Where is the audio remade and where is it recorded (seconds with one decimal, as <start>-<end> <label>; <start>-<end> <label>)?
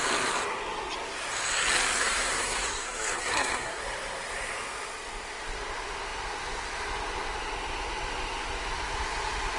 0.0-2.0 recorded; 2.0-3.8 remade; 3.8-9.6 recorded